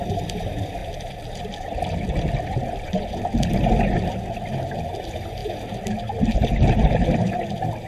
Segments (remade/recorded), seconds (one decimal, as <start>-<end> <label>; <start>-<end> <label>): 0.0-0.8 recorded; 0.8-1.3 remade; 1.3-7.9 recorded

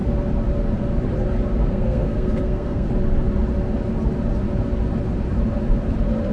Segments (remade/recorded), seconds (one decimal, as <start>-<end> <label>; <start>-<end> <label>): 0.0-1.6 recorded; 1.6-2.9 remade; 2.9-6.3 recorded

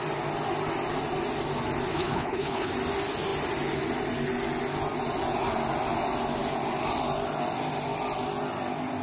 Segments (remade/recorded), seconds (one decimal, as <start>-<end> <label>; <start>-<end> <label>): 0.0-1.9 recorded; 1.9-2.7 remade; 2.7-9.0 recorded